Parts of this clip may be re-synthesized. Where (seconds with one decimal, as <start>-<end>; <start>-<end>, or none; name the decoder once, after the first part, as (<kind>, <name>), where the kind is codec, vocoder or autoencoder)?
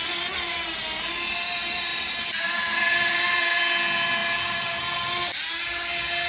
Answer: 1.9-3.6 (vocoder, BigVGAN v2)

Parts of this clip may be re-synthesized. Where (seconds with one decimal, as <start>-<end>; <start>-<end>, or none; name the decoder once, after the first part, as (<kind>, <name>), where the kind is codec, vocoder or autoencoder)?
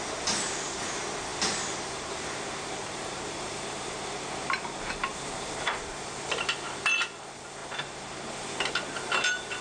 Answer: 1.3-5.9 (vocoder, BigVGAN v2)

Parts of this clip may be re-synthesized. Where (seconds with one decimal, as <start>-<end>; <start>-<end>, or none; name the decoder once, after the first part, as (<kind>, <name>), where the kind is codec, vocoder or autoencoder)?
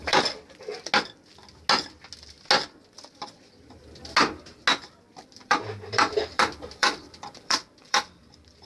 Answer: 0.0-0.7 (vocoder, BigVGAN v2); 5.1-8.7